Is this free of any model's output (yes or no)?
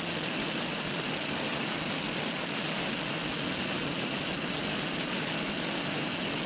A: yes